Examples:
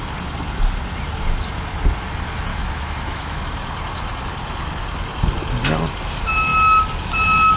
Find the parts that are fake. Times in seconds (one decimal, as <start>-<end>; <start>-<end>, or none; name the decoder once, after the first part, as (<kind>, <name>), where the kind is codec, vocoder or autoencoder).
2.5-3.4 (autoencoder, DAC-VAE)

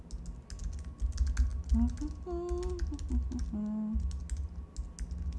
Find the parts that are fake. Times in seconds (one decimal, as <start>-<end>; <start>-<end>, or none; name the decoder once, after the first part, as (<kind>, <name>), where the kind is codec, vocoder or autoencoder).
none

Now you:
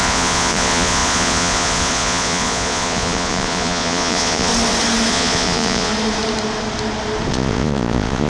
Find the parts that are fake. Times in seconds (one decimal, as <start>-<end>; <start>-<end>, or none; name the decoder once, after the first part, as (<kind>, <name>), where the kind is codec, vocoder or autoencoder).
0.0-4.5 (vocoder, Vocos); 5.1-5.9; 7.3-8.3

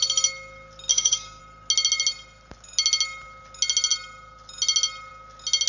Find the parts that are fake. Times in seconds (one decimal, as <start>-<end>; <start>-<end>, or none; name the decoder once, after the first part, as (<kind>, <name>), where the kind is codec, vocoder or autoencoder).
0.9-1.4 (codec, DAC)

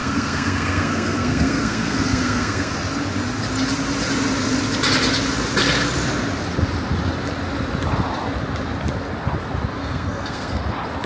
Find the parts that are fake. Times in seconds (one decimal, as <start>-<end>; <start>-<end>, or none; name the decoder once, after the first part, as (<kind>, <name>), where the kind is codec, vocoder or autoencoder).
0.0-2.7 (codec, SNAC); 9.8-10.6